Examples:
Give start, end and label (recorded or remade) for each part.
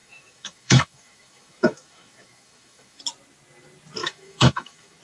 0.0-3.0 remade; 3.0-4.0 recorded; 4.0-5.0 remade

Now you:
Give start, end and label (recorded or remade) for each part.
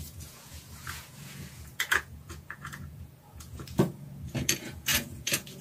0.0-5.6 remade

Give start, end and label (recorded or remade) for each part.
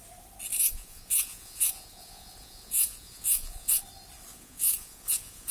0.0-0.5 recorded; 0.5-3.8 remade; 3.8-4.3 recorded; 4.3-5.5 remade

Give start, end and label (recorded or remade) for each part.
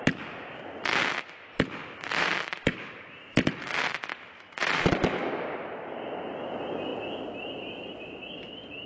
0.0-2.1 recorded; 2.1-2.9 remade; 2.9-4.6 recorded; 4.6-5.2 remade; 5.2-8.9 recorded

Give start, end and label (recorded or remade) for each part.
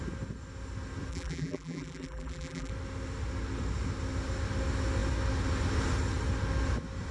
0.0-1.1 recorded; 1.1-2.7 remade; 2.7-7.1 recorded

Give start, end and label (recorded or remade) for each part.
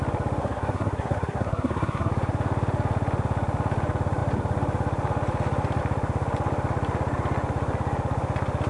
0.0-0.4 recorded; 0.4-2.1 remade; 2.1-8.7 recorded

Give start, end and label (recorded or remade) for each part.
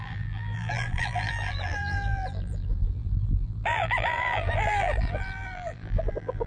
0.0-6.5 remade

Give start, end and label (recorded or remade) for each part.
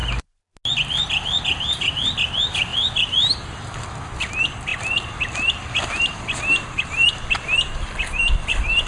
0.0-8.9 recorded